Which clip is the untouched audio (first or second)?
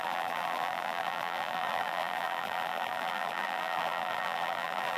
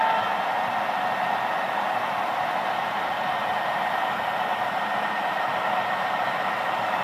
second